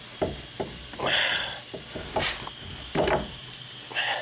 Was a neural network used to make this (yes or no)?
no